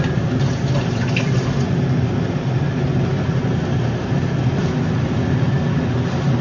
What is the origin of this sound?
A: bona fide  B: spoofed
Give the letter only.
A